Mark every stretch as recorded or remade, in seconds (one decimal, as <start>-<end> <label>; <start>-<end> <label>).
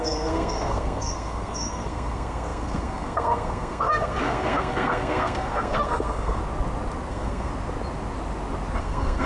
0.0-6.4 remade; 6.4-7.1 recorded; 7.1-7.5 remade; 7.5-8.8 recorded; 8.8-9.3 remade